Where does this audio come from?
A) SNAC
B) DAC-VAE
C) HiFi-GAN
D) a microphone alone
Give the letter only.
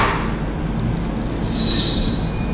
D